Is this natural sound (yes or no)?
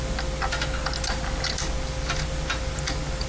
yes